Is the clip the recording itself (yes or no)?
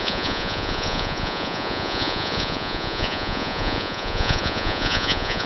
no